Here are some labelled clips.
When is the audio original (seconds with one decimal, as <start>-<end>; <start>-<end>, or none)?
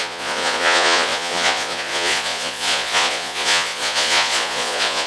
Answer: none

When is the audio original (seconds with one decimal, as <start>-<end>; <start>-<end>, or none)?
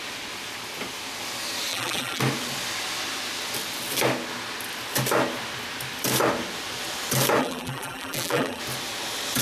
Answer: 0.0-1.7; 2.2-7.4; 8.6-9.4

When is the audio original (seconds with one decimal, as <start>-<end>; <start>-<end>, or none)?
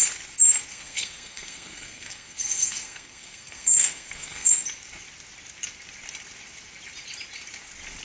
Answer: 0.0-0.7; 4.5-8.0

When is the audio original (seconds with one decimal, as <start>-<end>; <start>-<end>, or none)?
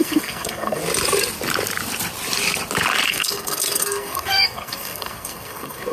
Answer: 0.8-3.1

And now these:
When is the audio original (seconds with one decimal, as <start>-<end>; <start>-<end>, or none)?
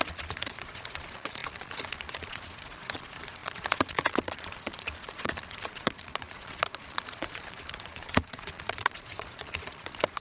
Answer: none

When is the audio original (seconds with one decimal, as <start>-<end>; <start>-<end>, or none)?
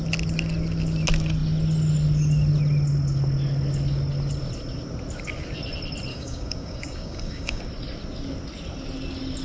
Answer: 0.0-6.1; 7.6-9.4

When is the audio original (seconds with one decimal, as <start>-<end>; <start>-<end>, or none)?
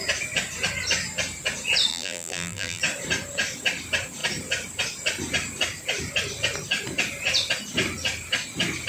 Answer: 0.0-1.9; 2.8-8.9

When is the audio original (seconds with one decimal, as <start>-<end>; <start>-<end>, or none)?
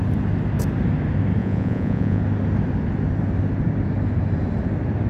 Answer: 0.0-1.4; 2.2-5.1